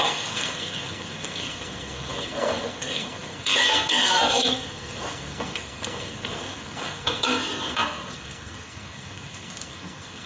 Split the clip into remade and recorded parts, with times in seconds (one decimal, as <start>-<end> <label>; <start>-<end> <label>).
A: 0.0-10.3 remade